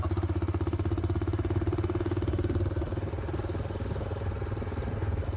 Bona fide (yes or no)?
yes